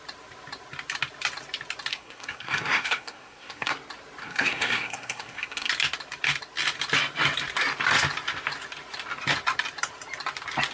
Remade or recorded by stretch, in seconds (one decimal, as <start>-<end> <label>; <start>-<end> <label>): 0.0-1.9 recorded; 1.9-3.7 remade; 3.7-4.2 recorded; 4.2-5.7 remade; 5.7-10.7 recorded